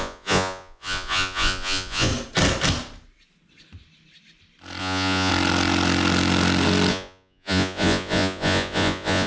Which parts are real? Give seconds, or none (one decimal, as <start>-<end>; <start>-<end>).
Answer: 2.1-4.8; 5.3-6.9